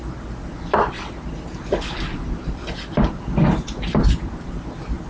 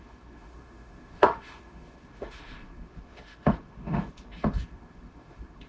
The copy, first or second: second